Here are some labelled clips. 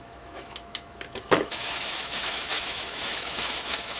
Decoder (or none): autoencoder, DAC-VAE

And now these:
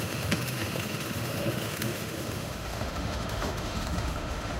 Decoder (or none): autoencoder, DAC-VAE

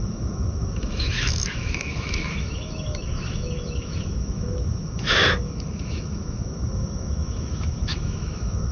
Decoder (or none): autoencoder, DAC-VAE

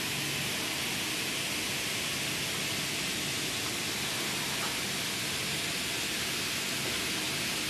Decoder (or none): none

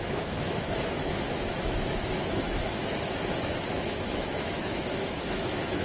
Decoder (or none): autoencoder, DAC-VAE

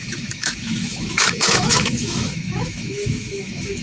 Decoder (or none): autoencoder, DAC-VAE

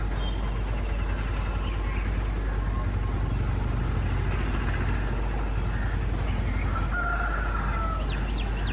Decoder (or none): none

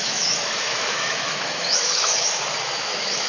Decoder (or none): autoencoder, DAC-VAE